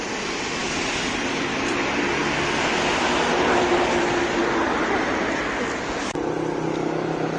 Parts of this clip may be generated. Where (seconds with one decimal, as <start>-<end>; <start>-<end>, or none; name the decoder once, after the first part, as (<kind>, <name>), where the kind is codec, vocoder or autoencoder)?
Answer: none

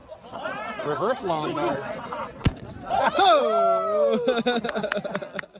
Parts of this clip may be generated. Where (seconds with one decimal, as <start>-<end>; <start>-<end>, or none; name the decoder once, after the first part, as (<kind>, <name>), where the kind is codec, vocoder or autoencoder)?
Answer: 0.0-3.4 (vocoder, WaveNeXt)

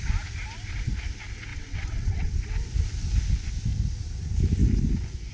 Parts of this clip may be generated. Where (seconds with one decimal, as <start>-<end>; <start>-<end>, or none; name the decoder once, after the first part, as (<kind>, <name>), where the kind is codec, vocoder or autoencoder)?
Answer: 1.5-2.3 (vocoder, WaveNeXt)

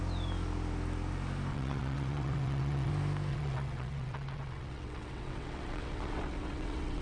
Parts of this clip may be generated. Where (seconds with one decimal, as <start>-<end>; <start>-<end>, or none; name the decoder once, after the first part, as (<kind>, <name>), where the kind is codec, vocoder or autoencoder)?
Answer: 1.5-2.9 (vocoder, WaveNeXt); 3.3-7.0

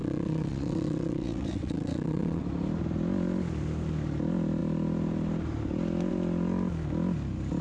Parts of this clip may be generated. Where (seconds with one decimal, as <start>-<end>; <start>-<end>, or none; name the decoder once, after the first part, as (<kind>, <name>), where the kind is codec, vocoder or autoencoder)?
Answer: 0.0-2.4 (vocoder, WaveNeXt)

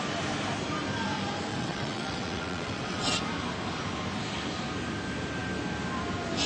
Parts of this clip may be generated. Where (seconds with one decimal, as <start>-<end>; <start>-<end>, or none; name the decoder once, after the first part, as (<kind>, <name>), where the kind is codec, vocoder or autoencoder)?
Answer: 1.5-3.2 (vocoder, WaveNeXt)

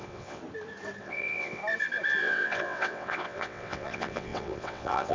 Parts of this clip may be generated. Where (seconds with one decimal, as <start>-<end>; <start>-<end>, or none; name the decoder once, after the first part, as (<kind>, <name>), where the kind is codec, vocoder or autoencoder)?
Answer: 0.0-0.4 (vocoder, WaveNeXt); 1.0-1.6; 2.2-5.1